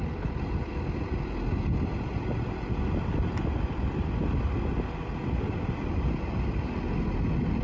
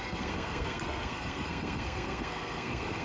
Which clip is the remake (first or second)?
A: second